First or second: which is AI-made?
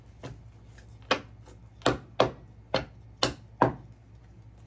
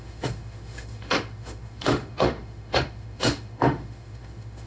second